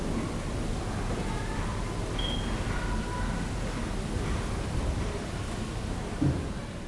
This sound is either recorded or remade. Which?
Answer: recorded